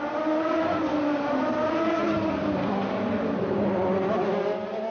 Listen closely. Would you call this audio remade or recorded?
recorded